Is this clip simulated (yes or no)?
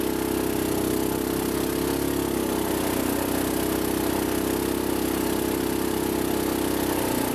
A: no